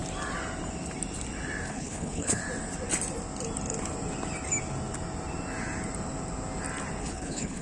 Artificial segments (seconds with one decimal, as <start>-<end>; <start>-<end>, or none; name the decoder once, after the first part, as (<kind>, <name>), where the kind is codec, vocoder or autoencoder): 1.7-2.4 (codec, HILCodec); 7.0-7.6